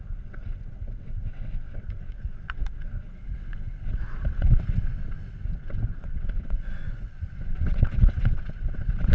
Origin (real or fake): fake